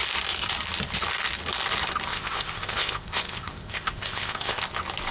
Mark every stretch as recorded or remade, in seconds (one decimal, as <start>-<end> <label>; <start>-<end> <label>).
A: 0.0-2.1 recorded; 2.1-4.6 remade; 4.6-5.1 recorded

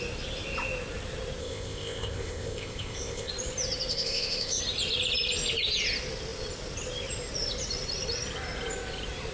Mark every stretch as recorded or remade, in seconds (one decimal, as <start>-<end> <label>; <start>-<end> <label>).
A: 0.0-1.4 recorded; 1.4-3.3 remade; 3.3-3.9 recorded; 3.9-4.6 remade; 4.6-9.3 recorded

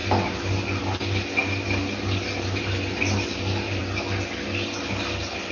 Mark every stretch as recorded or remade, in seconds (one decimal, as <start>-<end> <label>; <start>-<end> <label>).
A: 0.0-5.5 recorded

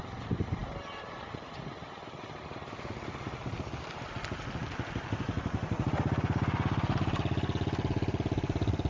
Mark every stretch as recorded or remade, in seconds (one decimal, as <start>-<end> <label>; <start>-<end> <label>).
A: 0.0-8.9 recorded